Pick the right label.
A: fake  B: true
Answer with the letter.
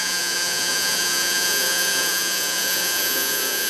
A